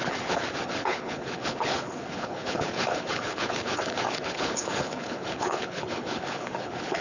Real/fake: fake